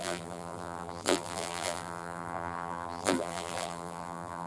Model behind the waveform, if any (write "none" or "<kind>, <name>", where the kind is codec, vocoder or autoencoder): vocoder, BigVGAN v2